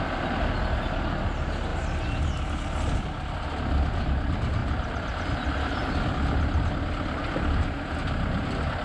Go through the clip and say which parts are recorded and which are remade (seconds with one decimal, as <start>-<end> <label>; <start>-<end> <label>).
0.0-4.6 recorded; 4.6-6.1 remade; 6.1-8.8 recorded